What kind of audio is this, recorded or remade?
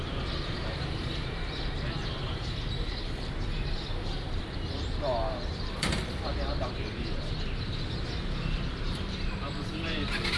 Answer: remade